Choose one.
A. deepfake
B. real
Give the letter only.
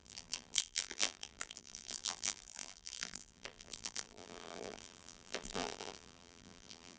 A